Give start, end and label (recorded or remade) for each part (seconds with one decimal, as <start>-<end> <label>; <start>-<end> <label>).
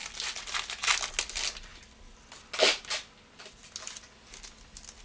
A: 0.0-5.0 recorded